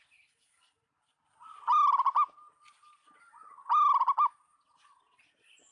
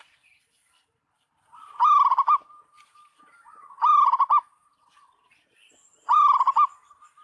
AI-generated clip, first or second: second